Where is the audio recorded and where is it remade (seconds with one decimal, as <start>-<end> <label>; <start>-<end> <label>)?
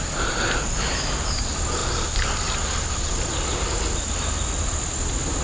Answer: 0.0-5.4 recorded